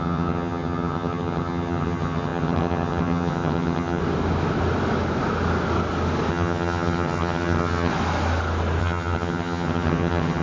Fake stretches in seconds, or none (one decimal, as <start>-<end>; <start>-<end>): 0.0-4.0; 6.3-7.9; 8.8-10.4